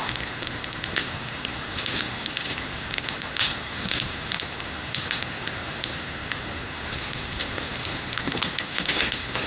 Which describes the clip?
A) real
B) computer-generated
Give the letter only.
B